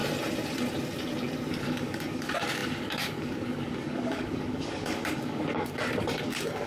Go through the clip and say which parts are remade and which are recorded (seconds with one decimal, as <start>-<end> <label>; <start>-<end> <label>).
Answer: 0.0-1.5 recorded; 1.5-6.7 remade